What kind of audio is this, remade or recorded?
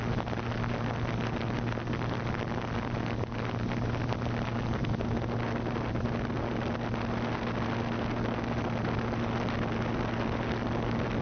recorded